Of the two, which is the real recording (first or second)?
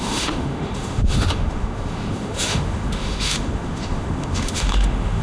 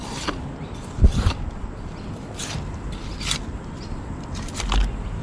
second